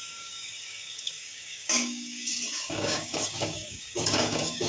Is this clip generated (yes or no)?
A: yes